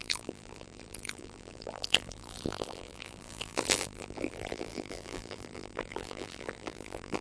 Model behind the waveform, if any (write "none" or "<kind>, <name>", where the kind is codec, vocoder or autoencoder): vocoder, BigVGAN v2